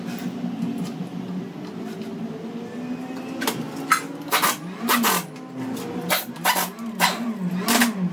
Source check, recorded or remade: recorded